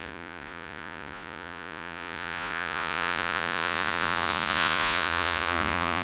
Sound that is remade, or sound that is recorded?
remade